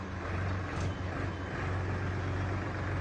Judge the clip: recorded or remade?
recorded